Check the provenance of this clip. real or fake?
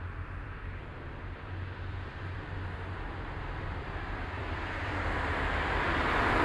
fake